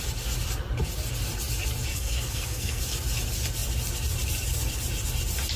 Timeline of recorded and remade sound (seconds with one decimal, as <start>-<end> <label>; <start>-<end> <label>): 0.0-1.9 recorded; 1.9-2.8 remade; 2.8-5.6 recorded